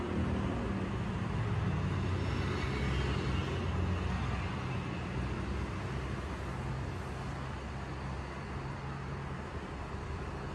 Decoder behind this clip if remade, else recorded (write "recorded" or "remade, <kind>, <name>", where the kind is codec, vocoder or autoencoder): recorded